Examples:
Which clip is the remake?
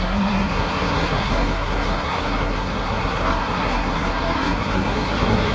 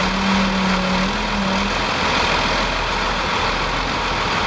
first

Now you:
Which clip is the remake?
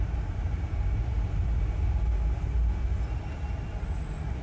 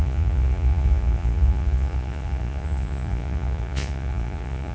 second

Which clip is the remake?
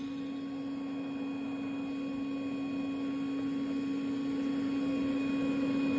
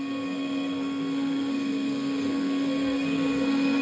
second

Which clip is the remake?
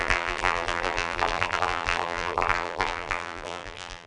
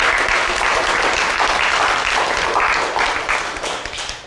first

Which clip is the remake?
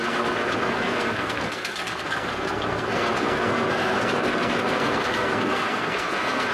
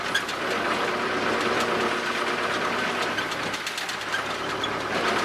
first